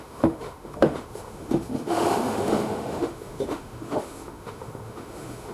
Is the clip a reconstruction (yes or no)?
yes